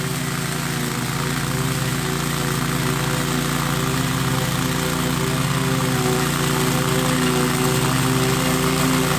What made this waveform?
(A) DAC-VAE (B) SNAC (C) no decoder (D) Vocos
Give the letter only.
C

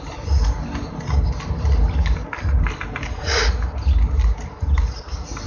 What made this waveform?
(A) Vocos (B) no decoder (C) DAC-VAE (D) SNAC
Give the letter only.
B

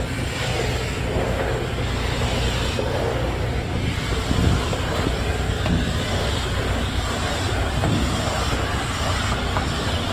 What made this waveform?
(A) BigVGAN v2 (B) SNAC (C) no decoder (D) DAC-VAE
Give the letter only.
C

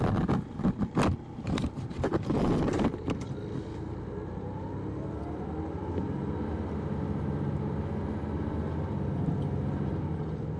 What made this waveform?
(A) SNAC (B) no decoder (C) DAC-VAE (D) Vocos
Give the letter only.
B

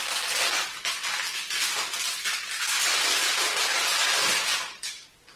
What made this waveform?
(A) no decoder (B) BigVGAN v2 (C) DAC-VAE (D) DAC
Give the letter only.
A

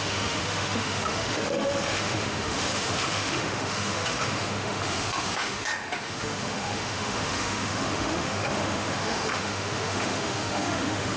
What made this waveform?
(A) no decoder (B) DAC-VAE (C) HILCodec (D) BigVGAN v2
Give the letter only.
B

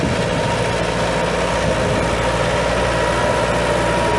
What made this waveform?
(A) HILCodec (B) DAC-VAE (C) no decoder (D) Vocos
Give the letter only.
C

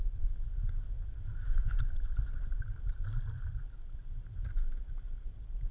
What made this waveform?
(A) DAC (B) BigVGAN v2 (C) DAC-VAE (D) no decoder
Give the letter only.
D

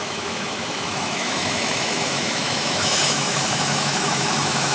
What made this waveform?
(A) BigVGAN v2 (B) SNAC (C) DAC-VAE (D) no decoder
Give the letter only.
C